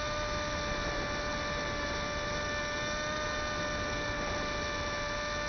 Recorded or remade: recorded